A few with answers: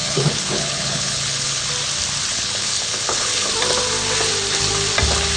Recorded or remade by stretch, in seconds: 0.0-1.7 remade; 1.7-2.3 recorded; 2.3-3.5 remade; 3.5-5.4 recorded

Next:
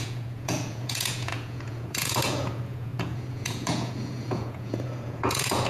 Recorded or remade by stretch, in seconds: 0.0-5.7 remade

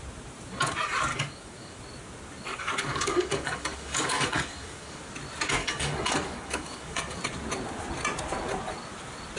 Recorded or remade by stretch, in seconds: 0.0-1.1 recorded; 1.1-1.8 remade; 1.8-2.5 recorded; 2.5-5.0 remade; 5.0-5.6 recorded; 5.6-7.2 remade; 7.2-9.4 recorded

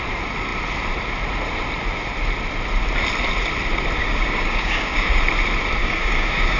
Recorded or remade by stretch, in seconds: 0.0-4.0 recorded; 4.0-5.2 remade; 5.2-5.8 recorded; 5.8-6.6 remade

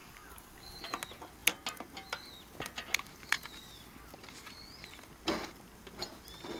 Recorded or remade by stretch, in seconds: 0.0-0.8 remade; 0.8-6.6 recorded

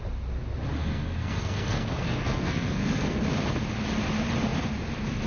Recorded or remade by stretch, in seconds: 0.0-0.8 recorded; 0.8-3.2 remade; 3.2-5.3 recorded

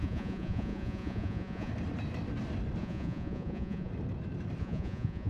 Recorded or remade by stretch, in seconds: 0.0-1.7 remade; 1.7-2.8 recorded; 2.8-3.9 remade; 3.9-4.6 recorded; 4.6-5.3 remade